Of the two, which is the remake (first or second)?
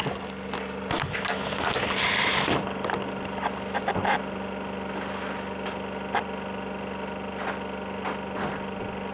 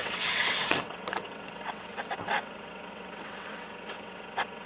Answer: second